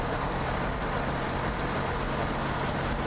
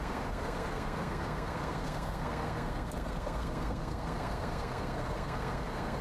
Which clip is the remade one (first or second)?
second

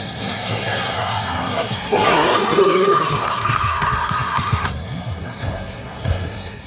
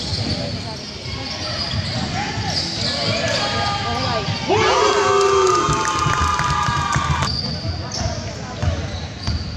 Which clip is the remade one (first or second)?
first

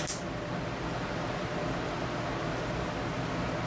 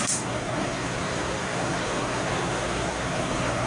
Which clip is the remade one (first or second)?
second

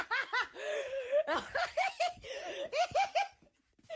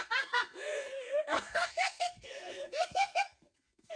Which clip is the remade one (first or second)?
second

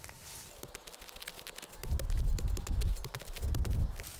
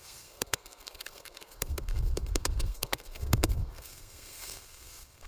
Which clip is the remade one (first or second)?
second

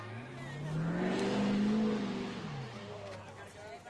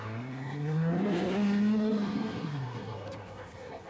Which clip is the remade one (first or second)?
second